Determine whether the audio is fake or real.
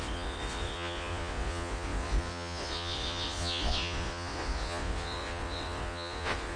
fake